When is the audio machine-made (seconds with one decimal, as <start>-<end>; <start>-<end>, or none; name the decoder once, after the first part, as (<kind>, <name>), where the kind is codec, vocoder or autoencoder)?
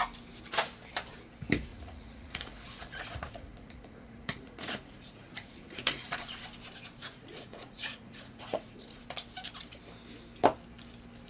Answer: 1.7-6.4 (vocoder, Vocos); 7.0-9.0